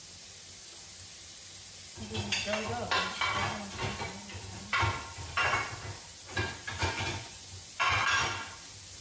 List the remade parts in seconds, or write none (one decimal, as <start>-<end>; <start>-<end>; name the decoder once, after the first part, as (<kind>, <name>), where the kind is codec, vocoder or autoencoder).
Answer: 6.8-8.0 (vocoder, Vocos)